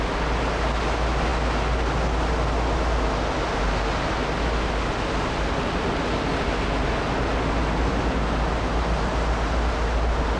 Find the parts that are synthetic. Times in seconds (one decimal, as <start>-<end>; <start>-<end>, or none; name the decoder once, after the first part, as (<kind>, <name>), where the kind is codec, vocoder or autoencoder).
none